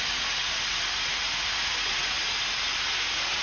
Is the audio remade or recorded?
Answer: recorded